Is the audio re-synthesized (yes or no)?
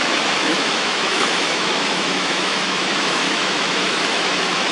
yes